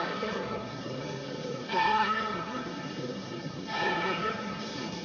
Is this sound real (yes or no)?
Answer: no